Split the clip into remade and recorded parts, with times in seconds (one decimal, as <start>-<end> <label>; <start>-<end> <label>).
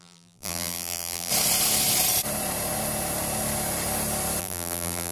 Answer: 0.0-1.3 remade; 1.3-4.4 recorded; 4.4-5.1 remade